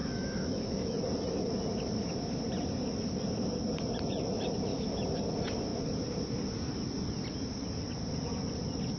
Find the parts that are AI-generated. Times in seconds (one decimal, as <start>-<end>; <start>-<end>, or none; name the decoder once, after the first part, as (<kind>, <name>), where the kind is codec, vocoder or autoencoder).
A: 0.0-1.0 (autoencoder, DAC-VAE); 4.7-5.2